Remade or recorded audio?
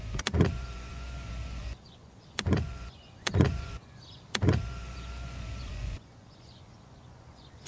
remade